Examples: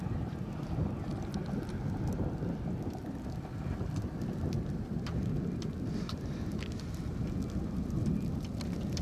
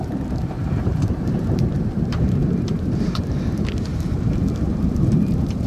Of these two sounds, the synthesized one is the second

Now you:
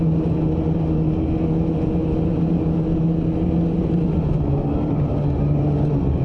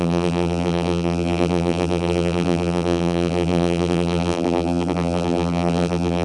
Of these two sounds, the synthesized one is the second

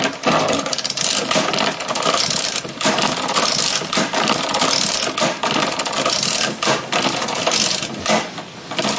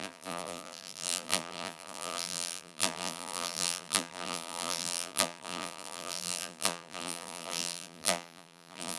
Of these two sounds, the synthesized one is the second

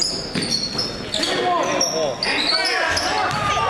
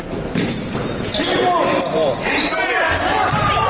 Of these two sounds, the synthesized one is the second